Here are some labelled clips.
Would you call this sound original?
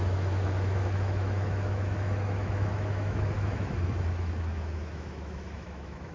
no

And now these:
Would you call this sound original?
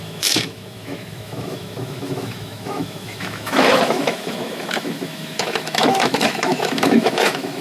no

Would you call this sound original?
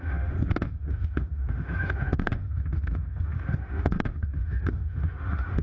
no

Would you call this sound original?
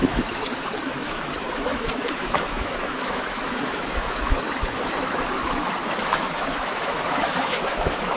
no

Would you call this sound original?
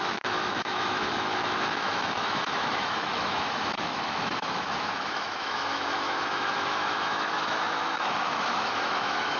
no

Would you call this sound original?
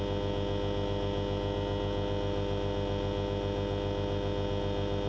yes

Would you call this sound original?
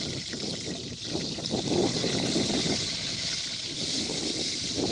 yes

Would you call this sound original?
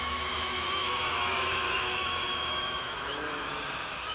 no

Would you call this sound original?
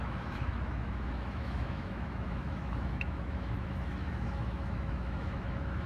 no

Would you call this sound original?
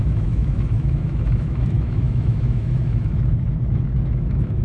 no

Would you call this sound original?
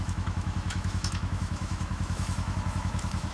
no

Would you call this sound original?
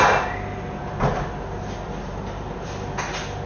yes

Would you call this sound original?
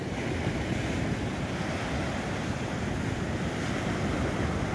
yes